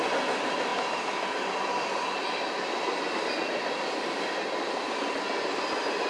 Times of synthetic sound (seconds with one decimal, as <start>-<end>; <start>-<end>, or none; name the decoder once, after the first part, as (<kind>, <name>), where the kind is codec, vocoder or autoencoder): none